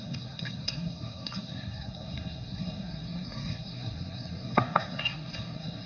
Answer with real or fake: fake